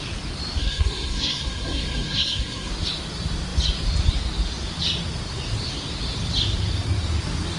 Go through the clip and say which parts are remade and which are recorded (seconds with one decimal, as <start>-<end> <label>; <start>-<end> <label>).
0.0-0.6 recorded; 0.6-2.7 remade; 2.7-7.6 recorded